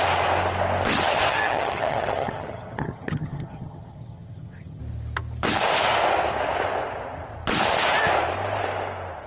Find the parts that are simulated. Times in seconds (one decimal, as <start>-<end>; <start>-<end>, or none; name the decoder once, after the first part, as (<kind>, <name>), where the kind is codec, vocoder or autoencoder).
1.3-4.8 (vocoder, HiFi-GAN)